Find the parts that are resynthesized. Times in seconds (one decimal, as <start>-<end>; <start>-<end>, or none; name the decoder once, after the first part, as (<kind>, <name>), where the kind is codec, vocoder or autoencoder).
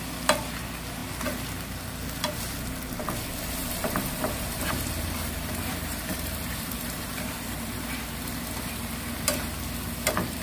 3.6-8.0 (vocoder, BigVGAN v2)